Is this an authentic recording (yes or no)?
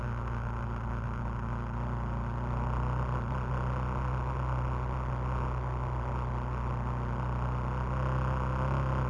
yes